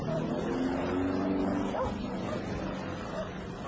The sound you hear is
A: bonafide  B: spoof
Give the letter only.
A